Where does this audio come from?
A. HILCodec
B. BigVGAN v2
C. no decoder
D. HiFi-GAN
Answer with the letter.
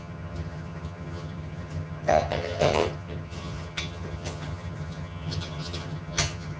D